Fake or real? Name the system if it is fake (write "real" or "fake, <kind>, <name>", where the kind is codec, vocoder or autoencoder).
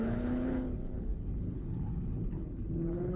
fake, codec, HILCodec